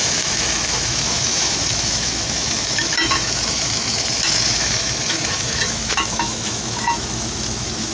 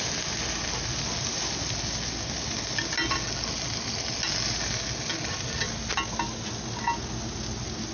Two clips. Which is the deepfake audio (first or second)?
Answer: first